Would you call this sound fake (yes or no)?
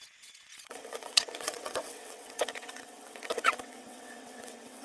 yes